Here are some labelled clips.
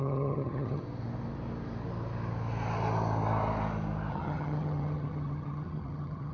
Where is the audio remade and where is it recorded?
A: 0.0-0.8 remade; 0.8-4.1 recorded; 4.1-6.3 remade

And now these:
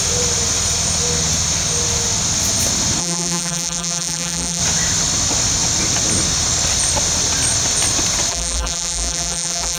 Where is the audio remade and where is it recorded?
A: 0.0-3.0 recorded; 3.0-4.6 remade; 4.6-8.3 recorded; 8.3-9.8 remade

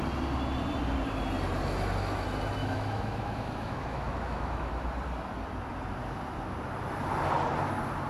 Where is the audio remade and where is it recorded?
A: 0.0-2.6 recorded; 2.6-4.7 remade; 4.7-8.1 recorded

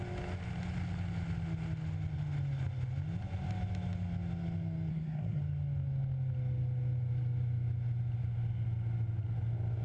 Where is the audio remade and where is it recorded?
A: 0.0-4.9 recorded; 4.9-5.4 remade; 5.4-9.8 recorded

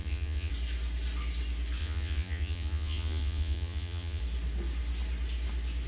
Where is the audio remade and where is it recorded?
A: 0.0-0.5 remade; 0.5-1.8 recorded; 1.8-4.2 remade; 4.2-5.9 recorded

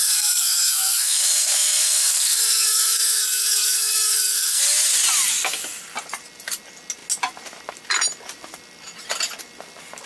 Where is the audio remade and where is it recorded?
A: 0.0-4.6 remade; 4.6-10.1 recorded